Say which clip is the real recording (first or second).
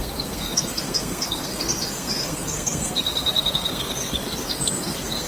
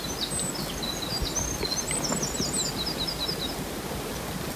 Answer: second